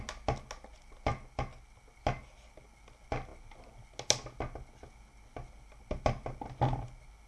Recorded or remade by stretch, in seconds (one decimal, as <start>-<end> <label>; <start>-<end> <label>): 0.0-7.3 recorded